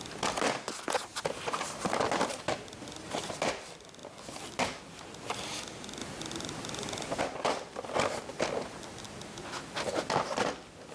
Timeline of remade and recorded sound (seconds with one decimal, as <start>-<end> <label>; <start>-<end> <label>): 0.0-10.9 recorded